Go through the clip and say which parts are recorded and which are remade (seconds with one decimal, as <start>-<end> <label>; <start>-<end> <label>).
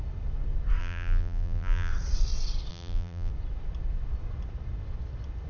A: 0.0-0.8 recorded; 0.8-1.9 remade; 1.9-2.7 recorded; 2.7-3.3 remade; 3.3-5.5 recorded